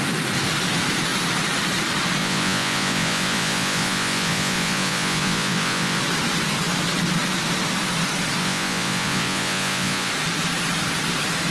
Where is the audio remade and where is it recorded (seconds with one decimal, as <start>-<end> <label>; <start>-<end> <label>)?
0.0-2.2 recorded; 2.2-6.0 remade; 6.0-8.4 recorded; 8.4-10.1 remade; 10.1-11.5 recorded